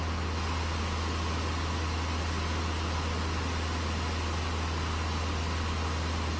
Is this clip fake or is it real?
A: real